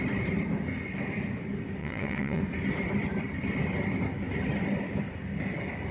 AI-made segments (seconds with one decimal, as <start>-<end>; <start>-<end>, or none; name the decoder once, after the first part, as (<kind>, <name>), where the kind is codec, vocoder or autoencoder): 1.8-2.4 (vocoder, WaveNeXt)